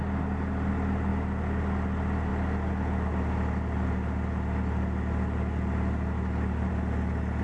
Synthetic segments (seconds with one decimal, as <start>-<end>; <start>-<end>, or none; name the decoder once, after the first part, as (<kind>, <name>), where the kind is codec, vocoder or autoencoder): none